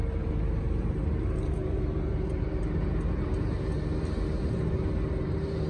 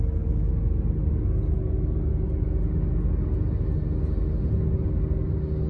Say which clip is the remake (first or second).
first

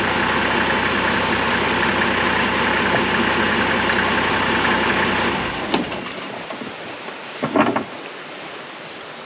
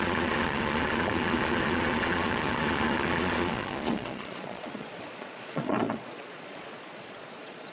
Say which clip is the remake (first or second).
second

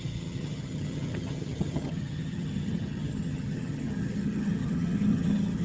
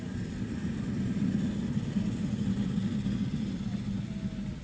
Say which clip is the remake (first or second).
first